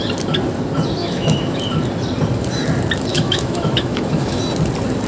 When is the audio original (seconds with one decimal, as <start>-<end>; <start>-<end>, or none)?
0.0-1.0; 1.6-3.1; 4.4-5.1